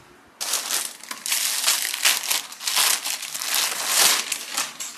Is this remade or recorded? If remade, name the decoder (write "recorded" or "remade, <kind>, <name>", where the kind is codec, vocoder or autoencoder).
recorded